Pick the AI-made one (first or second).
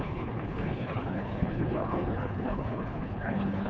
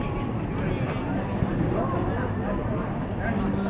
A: first